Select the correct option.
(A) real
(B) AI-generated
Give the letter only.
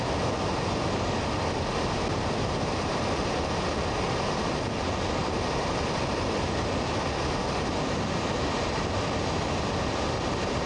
A